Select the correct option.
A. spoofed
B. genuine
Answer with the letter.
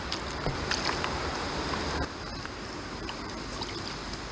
A